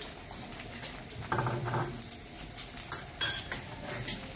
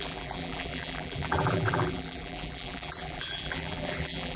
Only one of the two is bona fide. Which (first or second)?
first